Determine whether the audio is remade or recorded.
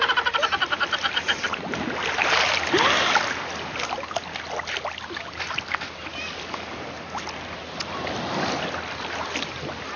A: recorded